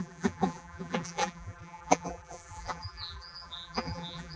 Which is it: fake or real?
fake